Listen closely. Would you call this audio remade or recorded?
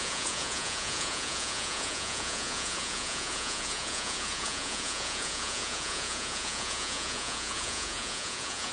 remade